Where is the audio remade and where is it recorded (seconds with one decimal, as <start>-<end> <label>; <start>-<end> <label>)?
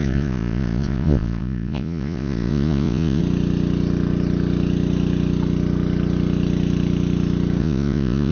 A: 0.0-3.2 remade; 3.2-7.6 recorded; 7.6-8.3 remade